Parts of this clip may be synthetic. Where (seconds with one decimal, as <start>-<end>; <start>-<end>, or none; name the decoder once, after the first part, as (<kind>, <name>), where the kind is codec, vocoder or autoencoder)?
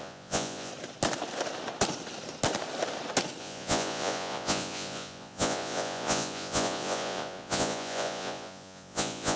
0.0-0.7 (vocoder, Vocos); 3.4-9.4